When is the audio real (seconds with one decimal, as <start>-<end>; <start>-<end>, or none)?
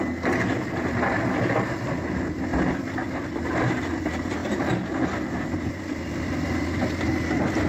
0.0-2.5; 3.4-7.7